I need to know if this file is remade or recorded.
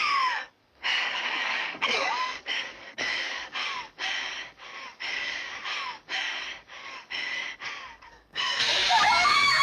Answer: remade